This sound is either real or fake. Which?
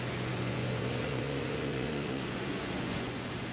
fake